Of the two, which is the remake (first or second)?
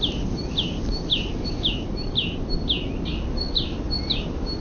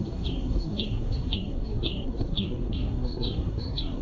second